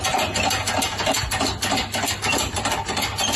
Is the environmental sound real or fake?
real